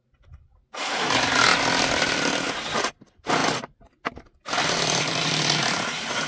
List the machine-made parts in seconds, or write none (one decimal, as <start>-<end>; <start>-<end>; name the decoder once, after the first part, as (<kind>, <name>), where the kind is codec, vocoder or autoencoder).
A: none